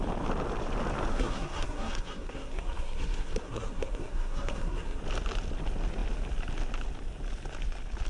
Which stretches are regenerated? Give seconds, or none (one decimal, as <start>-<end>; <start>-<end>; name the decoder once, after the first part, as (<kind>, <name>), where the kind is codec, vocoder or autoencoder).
1.1-5.0 (codec, SNAC)